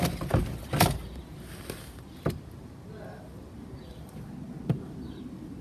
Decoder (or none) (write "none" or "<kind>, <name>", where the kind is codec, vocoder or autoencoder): none